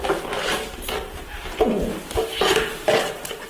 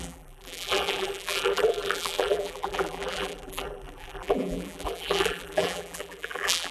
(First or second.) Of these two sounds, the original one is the first